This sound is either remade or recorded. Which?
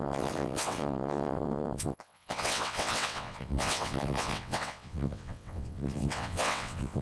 remade